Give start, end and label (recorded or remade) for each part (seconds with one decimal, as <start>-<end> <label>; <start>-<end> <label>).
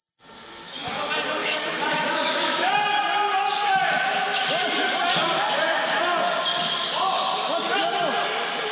0.0-1.4 recorded; 1.4-2.7 remade; 2.7-8.7 recorded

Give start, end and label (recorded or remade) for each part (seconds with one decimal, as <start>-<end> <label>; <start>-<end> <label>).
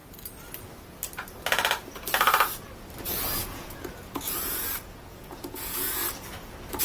0.0-3.0 recorded; 3.0-6.0 remade; 6.0-6.8 recorded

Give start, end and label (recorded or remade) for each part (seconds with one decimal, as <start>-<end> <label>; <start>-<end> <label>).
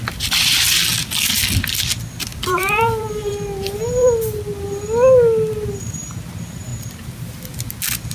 0.0-2.3 recorded; 2.3-3.3 remade; 3.3-4.0 recorded; 4.0-4.6 remade; 4.6-8.1 recorded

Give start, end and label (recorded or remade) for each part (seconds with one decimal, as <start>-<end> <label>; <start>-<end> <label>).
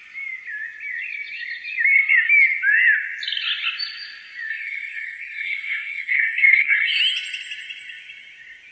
0.0-4.5 recorded; 4.5-7.0 remade; 7.0-8.7 recorded